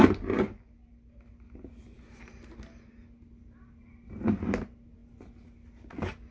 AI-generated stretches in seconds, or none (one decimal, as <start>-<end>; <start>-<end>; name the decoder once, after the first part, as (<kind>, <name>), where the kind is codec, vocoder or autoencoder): none